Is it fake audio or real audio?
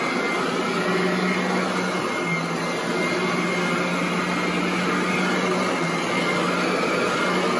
real